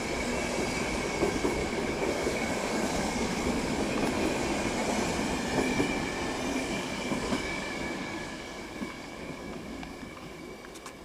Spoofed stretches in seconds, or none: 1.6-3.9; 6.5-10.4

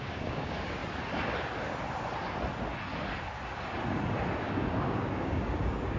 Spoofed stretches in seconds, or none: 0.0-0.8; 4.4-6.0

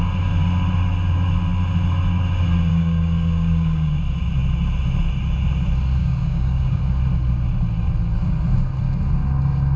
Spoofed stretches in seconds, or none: 2.7-4.0; 6.0-6.8